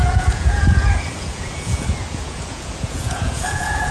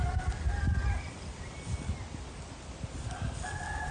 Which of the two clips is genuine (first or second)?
second